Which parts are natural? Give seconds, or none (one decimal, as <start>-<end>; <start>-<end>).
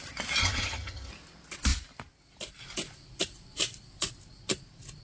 0.0-0.4; 1.1-5.0